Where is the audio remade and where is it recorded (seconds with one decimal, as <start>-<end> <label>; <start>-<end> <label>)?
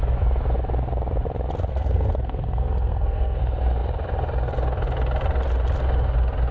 0.0-1.7 recorded; 1.7-3.4 remade; 3.4-6.5 recorded